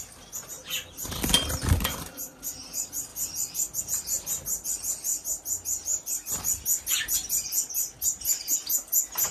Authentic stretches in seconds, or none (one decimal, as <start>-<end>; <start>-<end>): 0.0-9.3